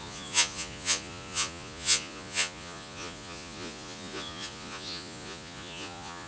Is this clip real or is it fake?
fake